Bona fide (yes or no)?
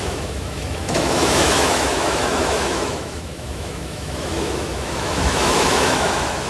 no